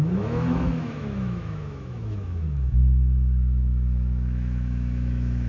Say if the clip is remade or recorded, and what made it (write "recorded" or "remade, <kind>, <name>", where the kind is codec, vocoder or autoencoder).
remade, autoencoder, DAC-VAE